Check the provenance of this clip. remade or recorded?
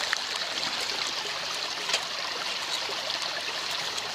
recorded